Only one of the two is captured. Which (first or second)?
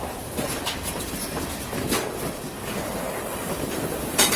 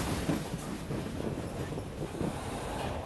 second